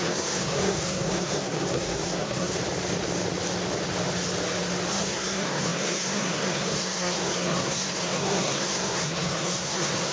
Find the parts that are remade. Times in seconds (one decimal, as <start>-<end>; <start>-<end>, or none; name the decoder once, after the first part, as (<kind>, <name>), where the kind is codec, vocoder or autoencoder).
0.0-2.5 (codec, SNAC); 4.9-10.1